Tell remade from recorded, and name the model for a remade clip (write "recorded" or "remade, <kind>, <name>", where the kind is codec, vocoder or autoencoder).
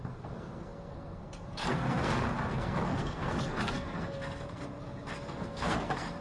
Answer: remade, codec, SNAC